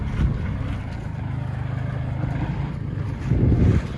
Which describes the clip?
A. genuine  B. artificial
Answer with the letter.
A